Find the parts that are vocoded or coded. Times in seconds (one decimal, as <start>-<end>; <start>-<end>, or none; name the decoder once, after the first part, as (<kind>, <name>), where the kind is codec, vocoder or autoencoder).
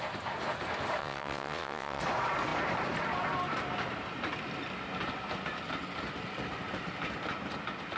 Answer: 1.0-2.0 (vocoder, WaveNeXt)